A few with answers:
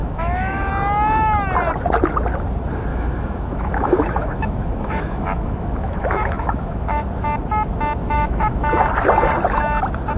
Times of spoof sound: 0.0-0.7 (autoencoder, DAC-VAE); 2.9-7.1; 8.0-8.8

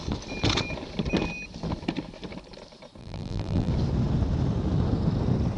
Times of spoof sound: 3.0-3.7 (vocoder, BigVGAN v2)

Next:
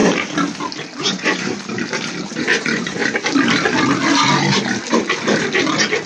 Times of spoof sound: 1.0-1.5 (vocoder, Vocos); 2.3-3.0

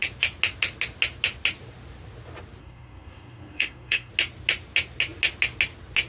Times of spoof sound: 2.6-4.1 (codec, SNAC)